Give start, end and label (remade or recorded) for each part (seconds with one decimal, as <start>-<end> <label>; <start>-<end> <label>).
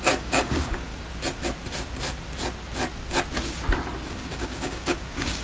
0.0-0.9 remade; 0.9-4.1 recorded; 4.1-5.4 remade